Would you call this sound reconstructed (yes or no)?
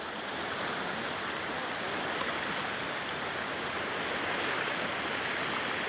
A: no